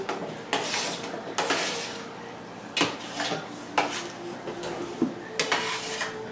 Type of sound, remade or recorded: recorded